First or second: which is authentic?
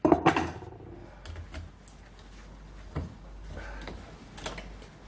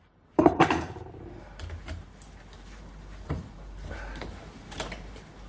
first